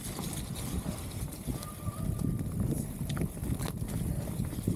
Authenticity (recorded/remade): recorded